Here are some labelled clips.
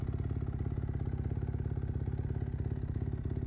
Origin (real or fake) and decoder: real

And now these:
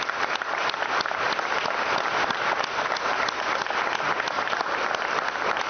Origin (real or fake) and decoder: real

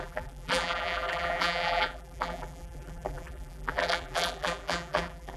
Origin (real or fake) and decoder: fake, vocoder, BigVGAN v2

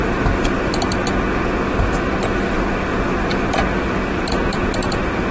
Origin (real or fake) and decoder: real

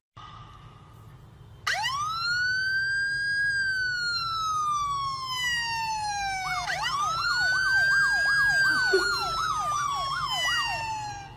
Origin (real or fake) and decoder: real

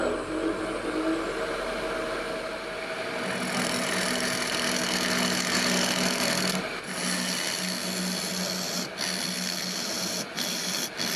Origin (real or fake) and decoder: real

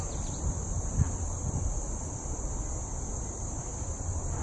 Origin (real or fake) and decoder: fake, vocoder, BigVGAN v2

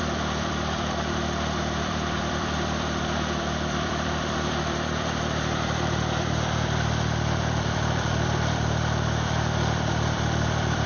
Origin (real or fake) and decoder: fake, vocoder, BigVGAN v2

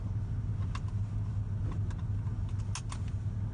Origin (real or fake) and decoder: real